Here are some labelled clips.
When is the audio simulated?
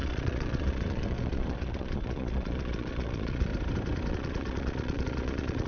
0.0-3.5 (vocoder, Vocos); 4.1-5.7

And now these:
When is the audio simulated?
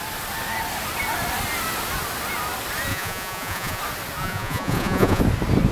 2.9-3.8 (vocoder, Vocos); 4.2-5.2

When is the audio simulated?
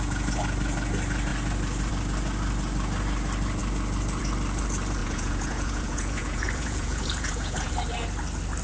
5.0-7.7 (vocoder, Vocos)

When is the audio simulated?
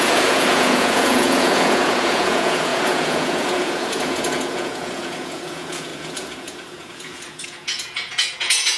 0.0-8.8 (vocoder, Vocos)